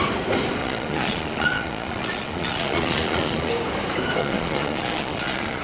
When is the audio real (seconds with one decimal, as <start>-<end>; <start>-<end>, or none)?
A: 0.0-0.6; 3.5-4.2